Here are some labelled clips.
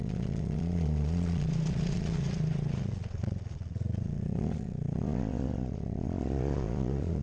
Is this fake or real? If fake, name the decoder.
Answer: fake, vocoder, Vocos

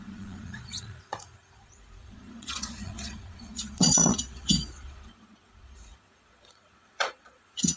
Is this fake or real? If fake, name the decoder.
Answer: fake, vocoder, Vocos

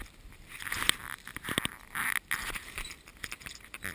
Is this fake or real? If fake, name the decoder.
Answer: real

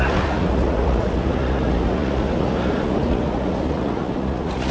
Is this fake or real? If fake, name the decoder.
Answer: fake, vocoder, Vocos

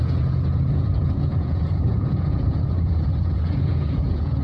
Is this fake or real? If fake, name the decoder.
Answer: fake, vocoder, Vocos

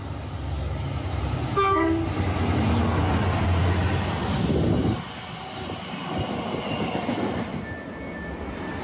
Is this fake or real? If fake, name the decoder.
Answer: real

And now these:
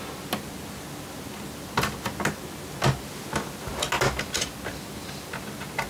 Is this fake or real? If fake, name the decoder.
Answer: real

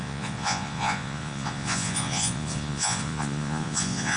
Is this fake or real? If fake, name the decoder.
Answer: fake, vocoder, Vocos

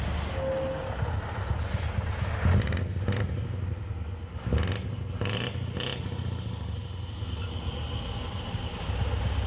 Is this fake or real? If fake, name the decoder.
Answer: real